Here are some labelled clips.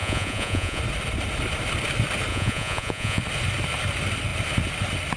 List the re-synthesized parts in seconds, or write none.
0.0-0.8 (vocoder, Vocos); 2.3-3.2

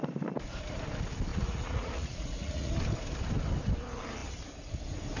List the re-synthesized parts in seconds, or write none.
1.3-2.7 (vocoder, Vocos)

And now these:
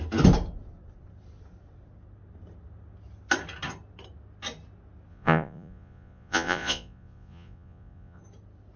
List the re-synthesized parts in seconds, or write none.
5.1-8.2 (vocoder, Vocos)

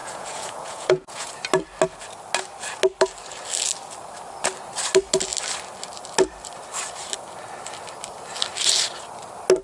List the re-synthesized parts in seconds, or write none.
0.0-1.3 (vocoder, Vocos)

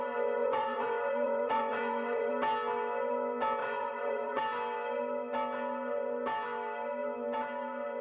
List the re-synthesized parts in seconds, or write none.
0.4-2.3 (vocoder, Vocos); 3.6-4.4

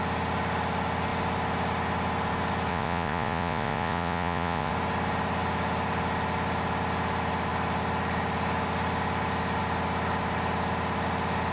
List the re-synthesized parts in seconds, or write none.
2.7-4.7 (vocoder, Vocos)

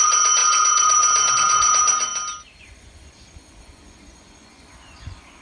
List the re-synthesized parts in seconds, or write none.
0.0-2.1 (vocoder, Vocos); 2.6-5.4

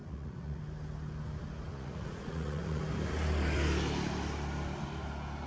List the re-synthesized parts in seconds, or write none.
0.0-0.6 (vocoder, Vocos); 1.7-2.8